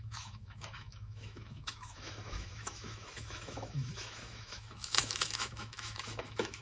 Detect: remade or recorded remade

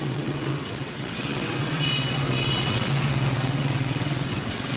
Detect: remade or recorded remade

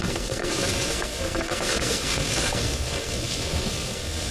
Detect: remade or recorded remade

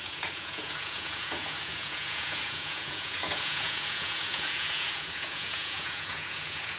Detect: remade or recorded remade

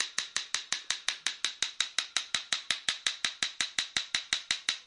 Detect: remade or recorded recorded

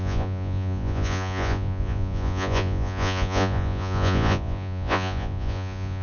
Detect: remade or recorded remade